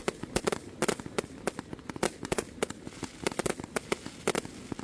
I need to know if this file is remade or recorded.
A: recorded